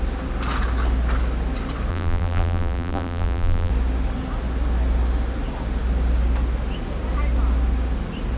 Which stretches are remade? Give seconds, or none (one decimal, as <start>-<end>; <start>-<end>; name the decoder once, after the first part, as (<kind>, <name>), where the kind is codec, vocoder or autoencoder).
1.9-3.7 (vocoder, BigVGAN v2)